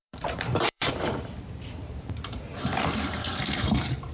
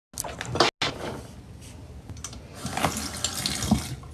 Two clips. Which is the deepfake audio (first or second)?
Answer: first